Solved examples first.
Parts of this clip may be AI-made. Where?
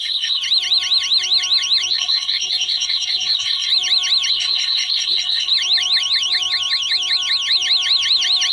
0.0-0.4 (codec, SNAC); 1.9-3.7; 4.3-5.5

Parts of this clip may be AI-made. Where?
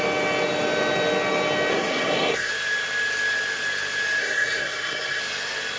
1.7-2.5 (codec, SNAC); 4.2-5.2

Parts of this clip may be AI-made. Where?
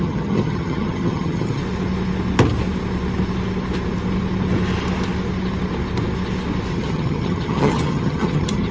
0.0-1.6 (vocoder, HiFi-GAN); 6.7-8.7